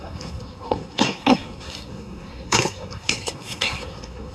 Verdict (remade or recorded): remade